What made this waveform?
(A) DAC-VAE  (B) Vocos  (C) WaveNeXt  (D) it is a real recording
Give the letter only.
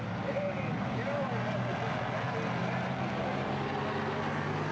D